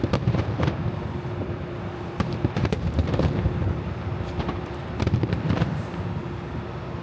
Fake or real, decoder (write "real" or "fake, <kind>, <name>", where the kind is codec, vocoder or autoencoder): fake, vocoder, BigVGAN v2